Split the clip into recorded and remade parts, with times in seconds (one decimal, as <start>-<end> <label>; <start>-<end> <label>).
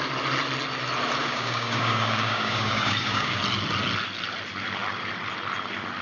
0.0-1.2 recorded; 1.2-3.4 remade; 3.4-6.0 recorded